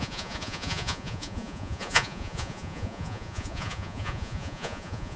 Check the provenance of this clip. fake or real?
fake